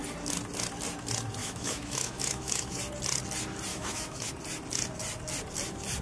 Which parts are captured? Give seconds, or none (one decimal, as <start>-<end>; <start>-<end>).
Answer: 0.0-1.4; 2.8-3.7; 4.3-6.0